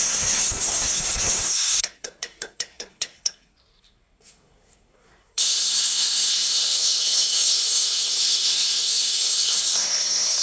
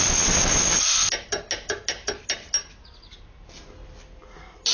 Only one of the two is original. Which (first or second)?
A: second